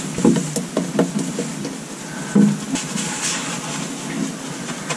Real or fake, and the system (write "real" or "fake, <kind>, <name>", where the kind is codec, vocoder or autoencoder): real